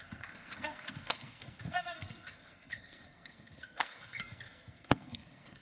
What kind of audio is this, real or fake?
fake